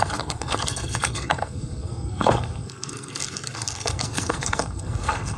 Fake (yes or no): yes